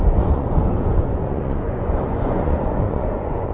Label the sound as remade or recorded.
remade